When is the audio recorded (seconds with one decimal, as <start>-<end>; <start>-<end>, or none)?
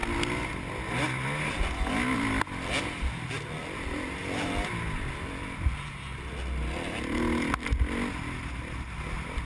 0.0-9.4